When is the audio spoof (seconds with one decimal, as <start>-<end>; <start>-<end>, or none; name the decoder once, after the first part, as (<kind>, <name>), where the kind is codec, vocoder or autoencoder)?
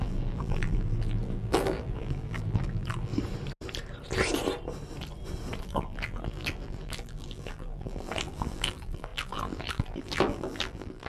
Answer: 0.0-3.1 (vocoder, BigVGAN v2); 5.6-11.1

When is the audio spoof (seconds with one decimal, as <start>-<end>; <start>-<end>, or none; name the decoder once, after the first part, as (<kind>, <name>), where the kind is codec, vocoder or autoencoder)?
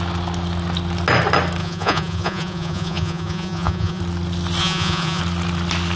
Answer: 1.6-4.0 (vocoder, Vocos); 4.6-5.2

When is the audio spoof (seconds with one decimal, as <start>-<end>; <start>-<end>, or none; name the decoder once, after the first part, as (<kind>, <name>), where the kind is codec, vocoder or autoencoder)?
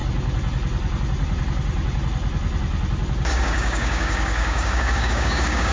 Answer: 3.4-5.7 (codec, DAC)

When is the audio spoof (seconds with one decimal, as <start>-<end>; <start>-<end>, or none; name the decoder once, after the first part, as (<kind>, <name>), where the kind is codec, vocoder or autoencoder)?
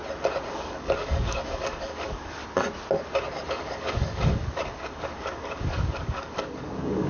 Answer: 0.5-2.4 (codec, DAC); 3.5-7.1